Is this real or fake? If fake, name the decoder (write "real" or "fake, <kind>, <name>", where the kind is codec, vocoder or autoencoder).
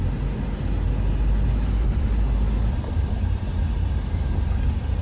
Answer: real